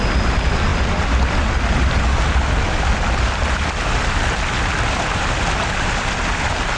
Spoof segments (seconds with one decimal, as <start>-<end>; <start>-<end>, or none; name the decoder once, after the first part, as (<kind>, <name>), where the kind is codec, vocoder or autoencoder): none